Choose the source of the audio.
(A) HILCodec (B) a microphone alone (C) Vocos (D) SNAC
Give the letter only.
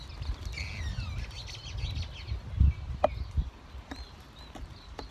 B